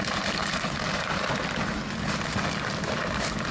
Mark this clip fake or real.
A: real